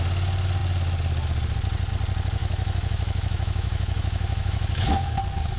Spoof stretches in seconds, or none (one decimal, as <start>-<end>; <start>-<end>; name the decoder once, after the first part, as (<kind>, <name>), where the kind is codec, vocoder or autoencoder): 2.4-5.1 (autoencoder, DAC-VAE)

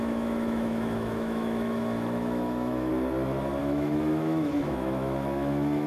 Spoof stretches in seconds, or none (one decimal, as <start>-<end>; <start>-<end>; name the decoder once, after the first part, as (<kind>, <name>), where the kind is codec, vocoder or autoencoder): 0.0-2.9 (autoencoder, DAC-VAE); 3.6-5.9

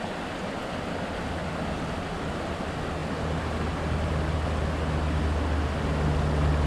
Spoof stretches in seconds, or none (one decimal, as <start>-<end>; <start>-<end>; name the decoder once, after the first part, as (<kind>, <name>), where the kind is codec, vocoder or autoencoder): none

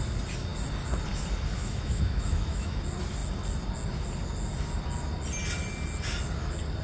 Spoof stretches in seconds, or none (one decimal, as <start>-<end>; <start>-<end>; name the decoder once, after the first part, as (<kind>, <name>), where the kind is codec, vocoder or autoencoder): 1.5-2.8 (autoencoder, DAC-VAE)

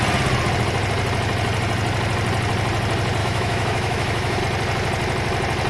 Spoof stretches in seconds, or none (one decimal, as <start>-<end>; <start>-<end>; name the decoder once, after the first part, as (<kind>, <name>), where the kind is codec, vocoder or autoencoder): 3.2-4.4 (autoencoder, DAC-VAE)